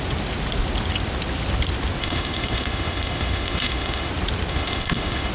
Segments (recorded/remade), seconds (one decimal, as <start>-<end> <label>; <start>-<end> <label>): 0.0-2.0 recorded; 2.0-4.1 remade; 4.1-4.5 recorded; 4.5-5.3 remade